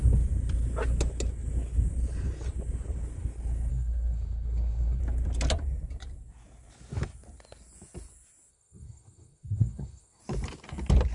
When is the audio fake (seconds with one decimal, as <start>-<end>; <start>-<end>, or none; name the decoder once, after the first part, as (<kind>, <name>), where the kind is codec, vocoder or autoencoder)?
3.7-5.0 (codec, SNAC); 8.5-10.2